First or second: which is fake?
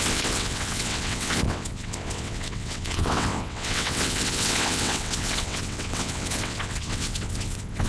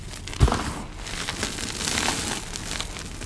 first